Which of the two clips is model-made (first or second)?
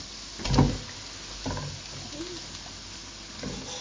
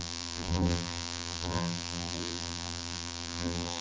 second